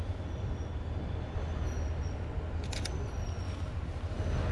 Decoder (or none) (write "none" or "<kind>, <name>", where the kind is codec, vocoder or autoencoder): none